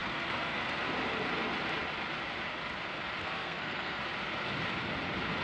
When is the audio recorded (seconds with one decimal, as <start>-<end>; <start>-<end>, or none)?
0.6-3.2; 4.0-5.4